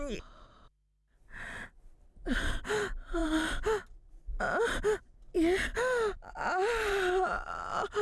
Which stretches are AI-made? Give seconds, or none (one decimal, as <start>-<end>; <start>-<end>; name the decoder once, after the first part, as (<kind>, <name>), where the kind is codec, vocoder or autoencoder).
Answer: none